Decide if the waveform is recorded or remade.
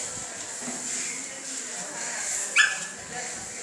recorded